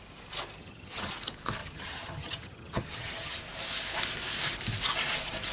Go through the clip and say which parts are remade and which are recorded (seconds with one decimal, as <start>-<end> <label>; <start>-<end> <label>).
0.0-0.6 recorded; 0.6-1.1 remade; 1.1-1.6 recorded; 1.6-3.4 remade; 3.4-5.5 recorded